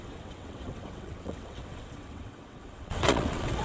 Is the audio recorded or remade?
remade